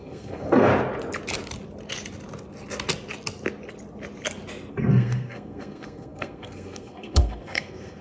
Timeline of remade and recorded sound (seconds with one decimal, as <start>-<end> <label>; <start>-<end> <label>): 0.0-0.7 remade; 0.7-4.7 recorded; 4.7-8.0 remade